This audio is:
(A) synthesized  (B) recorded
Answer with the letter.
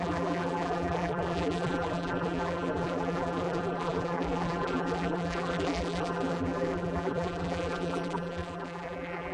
A